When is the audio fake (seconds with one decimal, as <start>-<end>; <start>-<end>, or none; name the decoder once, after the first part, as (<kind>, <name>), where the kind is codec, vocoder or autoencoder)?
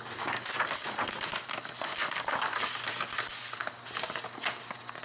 none